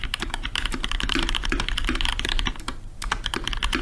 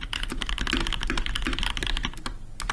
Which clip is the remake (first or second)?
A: first